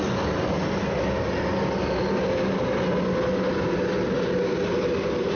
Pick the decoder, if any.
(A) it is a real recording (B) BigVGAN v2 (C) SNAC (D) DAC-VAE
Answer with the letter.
A